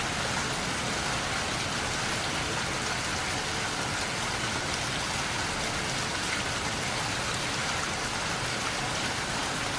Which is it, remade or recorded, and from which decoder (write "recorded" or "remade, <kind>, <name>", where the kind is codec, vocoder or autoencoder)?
recorded